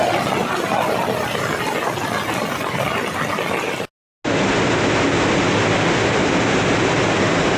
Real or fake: real